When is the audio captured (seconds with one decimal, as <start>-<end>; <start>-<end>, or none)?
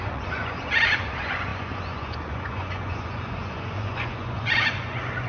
none